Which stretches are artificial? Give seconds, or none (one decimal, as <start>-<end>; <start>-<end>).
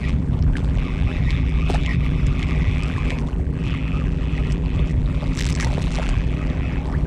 0.0-7.1